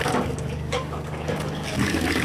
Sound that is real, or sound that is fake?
fake